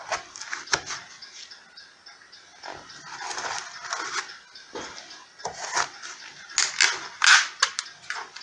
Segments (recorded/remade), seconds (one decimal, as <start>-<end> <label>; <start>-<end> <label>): 0.0-8.4 recorded